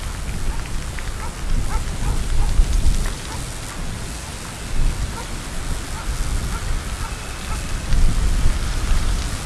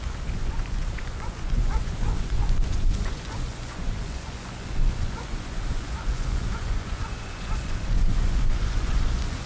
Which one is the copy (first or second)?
second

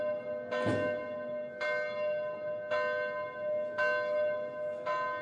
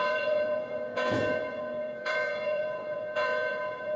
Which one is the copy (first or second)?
second